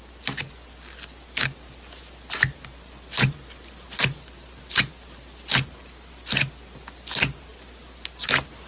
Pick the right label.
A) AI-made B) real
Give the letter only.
B